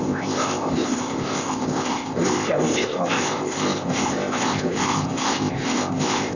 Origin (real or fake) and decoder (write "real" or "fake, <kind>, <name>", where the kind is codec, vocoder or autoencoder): fake, codec, ZipCodec